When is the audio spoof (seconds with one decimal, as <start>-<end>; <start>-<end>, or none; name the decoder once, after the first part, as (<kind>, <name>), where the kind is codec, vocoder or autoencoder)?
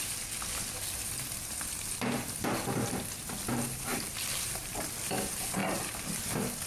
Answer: 3.9-4.8 (vocoder, BigVGAN v2)